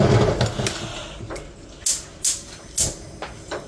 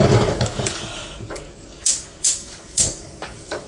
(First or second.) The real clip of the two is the first